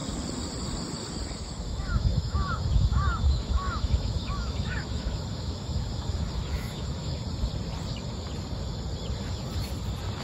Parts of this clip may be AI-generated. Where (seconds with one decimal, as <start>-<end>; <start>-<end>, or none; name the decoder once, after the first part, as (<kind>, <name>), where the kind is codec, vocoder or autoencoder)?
1.3-7.2 (autoencoder, DAC-VAE)